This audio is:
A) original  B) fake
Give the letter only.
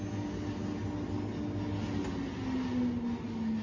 A